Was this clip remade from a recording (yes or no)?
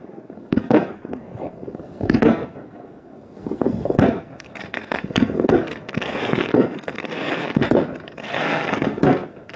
yes